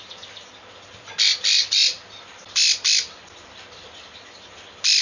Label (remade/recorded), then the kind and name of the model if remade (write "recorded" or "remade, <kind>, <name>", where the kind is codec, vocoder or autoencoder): recorded